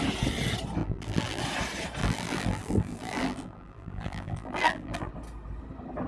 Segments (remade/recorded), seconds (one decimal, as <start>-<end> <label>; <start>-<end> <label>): 0.0-0.8 recorded; 0.8-1.4 remade; 1.4-2.0 recorded; 2.0-5.1 remade; 5.1-6.1 recorded